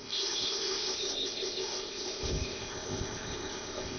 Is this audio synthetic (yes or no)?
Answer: yes